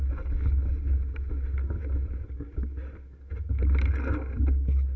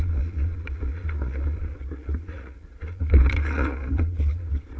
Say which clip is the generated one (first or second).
second